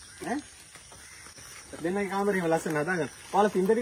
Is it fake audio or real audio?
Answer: real